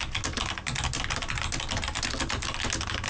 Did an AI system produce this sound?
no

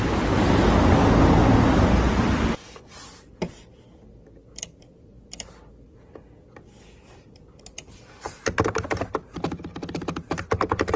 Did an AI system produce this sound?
no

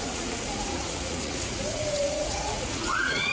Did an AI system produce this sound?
yes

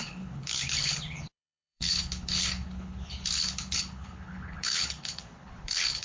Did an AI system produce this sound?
yes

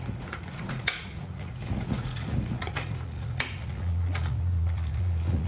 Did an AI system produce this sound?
yes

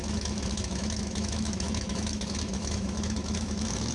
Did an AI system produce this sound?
yes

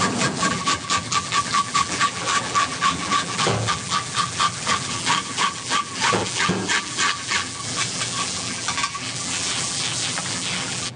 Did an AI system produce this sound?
yes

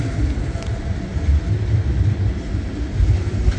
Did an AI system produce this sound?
no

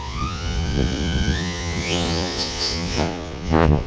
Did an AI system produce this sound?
yes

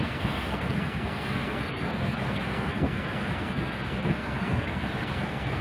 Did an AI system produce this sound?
yes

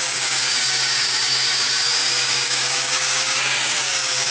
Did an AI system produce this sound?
yes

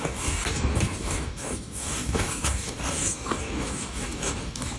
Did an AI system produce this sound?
yes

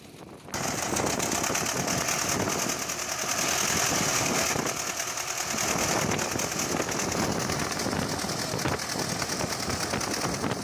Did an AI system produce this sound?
no